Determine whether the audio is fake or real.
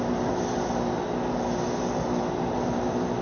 real